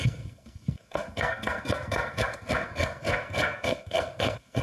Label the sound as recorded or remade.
remade